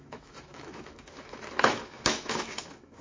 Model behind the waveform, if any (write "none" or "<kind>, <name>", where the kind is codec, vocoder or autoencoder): autoencoder, DAC-VAE